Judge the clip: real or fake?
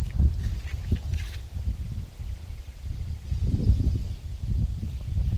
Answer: real